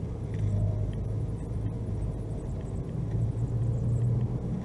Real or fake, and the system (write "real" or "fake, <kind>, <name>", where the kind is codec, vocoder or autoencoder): real